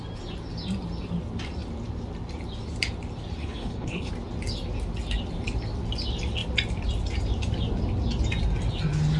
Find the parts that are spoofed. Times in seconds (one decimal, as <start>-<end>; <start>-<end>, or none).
3.4-4.1